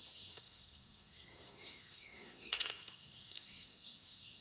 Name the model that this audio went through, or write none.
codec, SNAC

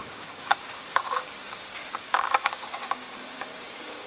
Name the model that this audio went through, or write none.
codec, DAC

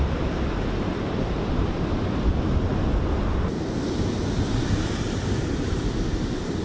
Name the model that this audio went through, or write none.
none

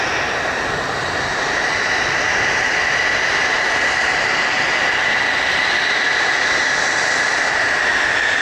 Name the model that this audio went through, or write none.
none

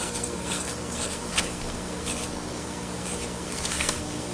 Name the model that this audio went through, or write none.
codec, SNAC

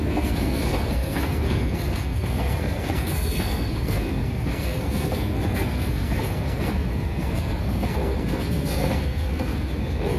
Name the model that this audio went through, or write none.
codec, SNAC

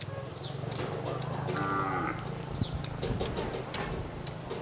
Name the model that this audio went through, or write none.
none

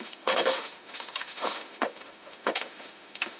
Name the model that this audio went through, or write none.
autoencoder, DAC-VAE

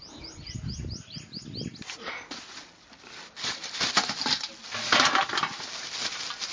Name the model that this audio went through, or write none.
none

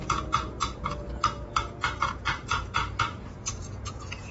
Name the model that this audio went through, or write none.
vocoder, Vocos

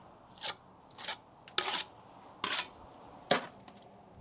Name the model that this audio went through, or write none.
none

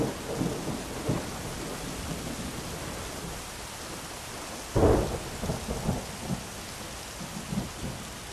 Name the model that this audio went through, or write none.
none